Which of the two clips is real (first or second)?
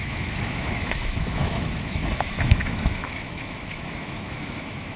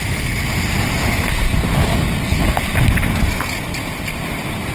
second